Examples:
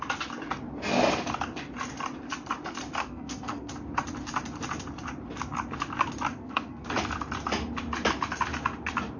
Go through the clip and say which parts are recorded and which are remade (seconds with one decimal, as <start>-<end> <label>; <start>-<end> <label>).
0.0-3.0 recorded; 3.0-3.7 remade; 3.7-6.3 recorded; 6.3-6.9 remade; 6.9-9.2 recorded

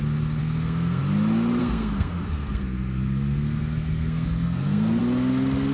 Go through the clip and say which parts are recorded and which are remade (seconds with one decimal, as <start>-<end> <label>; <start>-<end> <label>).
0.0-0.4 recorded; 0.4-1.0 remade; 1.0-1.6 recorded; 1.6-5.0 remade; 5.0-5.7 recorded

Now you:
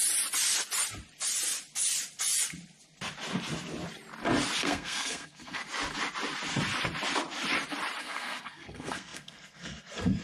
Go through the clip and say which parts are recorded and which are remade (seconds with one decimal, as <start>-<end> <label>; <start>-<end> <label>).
0.0-4.6 recorded; 4.6-5.6 remade; 5.6-8.0 recorded; 8.0-10.2 remade

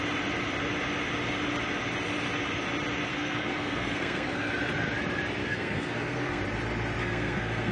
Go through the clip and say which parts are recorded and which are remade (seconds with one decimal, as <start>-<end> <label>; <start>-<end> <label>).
0.0-3.1 recorded; 3.1-4.5 remade; 4.5-5.4 recorded; 5.4-6.4 remade; 6.4-7.0 recorded; 7.0-7.7 remade

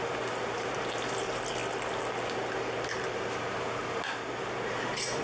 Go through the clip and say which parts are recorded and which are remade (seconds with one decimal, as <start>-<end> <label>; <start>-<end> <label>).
0.0-5.2 recorded

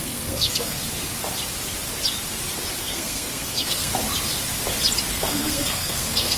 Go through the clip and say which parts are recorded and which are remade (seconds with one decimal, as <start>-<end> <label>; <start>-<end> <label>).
0.0-0.8 remade; 0.8-2.8 recorded; 2.8-3.9 remade; 3.9-5.1 recorded; 5.1-6.4 remade

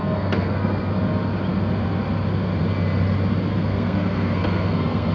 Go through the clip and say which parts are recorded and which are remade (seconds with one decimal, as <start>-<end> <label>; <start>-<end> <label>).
0.0-0.9 remade; 0.9-3.5 recorded; 3.5-5.1 remade